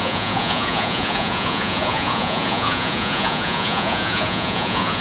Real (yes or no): no